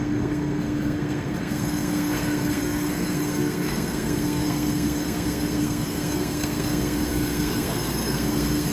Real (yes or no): no